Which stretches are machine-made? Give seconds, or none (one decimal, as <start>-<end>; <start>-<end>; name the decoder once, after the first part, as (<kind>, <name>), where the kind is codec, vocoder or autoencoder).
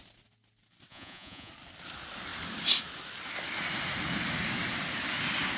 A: 0.9-1.5 (vocoder, Vocos)